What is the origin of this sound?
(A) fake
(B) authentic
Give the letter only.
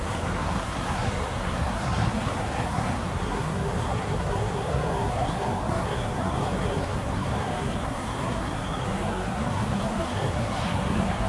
A